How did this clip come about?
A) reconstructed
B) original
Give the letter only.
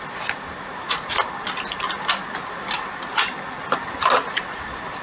B